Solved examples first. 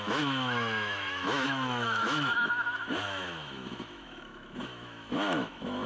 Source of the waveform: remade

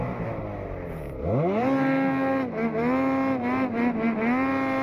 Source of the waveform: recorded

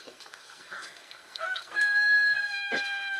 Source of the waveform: remade